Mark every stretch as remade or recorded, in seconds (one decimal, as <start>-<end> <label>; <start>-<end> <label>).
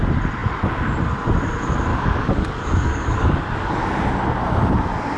0.0-1.9 recorded; 1.9-3.7 remade; 3.7-5.2 recorded